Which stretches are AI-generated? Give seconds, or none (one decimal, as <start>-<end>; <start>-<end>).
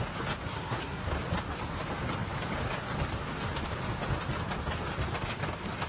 0.5-1.1